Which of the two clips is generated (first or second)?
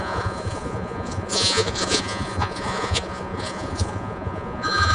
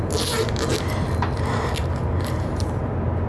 first